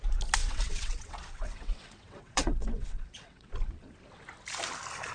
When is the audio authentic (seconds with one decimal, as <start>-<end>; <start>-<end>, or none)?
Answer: 0.0-0.4; 3.5-5.1